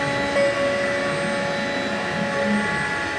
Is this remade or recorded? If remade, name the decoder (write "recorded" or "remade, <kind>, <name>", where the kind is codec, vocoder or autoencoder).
recorded